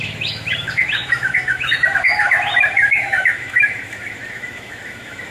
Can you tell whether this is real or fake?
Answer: fake